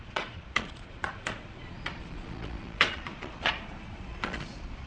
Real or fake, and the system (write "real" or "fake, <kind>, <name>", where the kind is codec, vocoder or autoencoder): fake, vocoder, Vocos